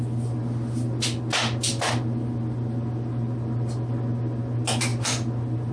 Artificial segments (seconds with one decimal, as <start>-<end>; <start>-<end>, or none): none